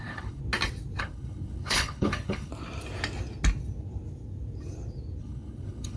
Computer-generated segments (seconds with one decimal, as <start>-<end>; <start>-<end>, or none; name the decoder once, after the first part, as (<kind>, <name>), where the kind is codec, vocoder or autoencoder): 0.0-0.4 (codec, HILCodec); 1.0-2.5; 5.2-6.0